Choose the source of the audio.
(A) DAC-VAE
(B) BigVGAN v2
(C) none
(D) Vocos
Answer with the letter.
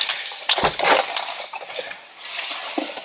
C